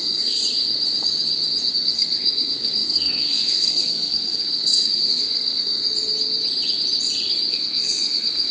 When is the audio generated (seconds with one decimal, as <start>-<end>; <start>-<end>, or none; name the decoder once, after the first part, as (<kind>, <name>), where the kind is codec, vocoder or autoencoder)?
0.0-0.4 (codec, SNAC); 1.7-5.8; 7.5-8.5